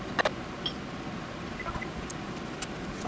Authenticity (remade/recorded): recorded